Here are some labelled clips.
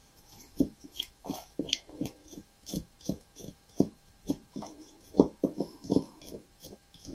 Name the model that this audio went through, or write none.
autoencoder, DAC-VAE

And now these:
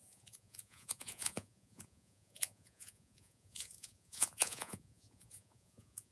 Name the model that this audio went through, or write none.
vocoder, Vocos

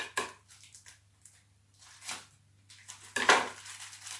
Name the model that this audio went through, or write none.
none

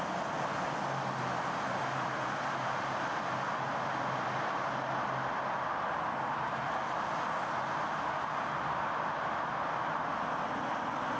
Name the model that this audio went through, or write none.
none